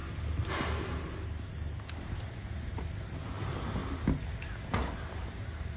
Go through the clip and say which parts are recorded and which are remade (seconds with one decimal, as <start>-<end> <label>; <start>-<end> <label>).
0.0-5.8 recorded